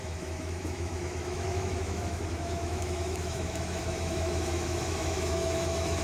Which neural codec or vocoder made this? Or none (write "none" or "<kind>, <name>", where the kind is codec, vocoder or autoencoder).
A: autoencoder, DAC-VAE